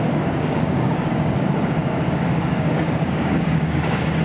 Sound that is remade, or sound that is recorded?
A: remade